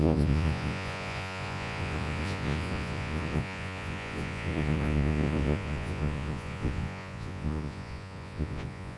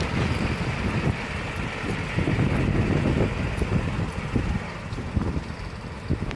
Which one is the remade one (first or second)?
first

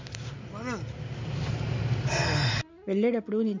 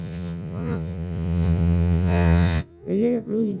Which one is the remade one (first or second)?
second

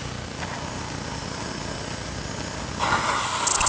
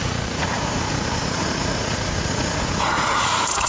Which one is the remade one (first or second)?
second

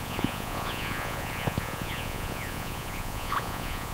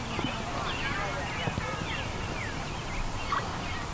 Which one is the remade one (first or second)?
first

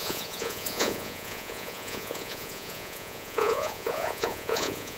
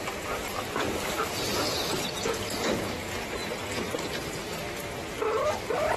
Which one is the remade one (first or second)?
first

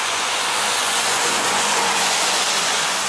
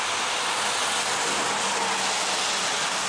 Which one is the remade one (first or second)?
first